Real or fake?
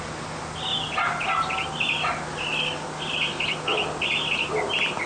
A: real